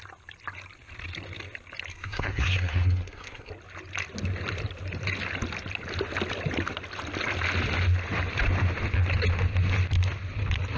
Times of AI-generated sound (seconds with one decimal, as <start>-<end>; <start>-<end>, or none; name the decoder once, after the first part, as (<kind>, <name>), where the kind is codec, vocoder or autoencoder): 1.9-3.5 (codec, SNAC)